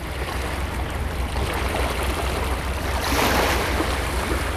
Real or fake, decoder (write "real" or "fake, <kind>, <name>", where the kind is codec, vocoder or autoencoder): real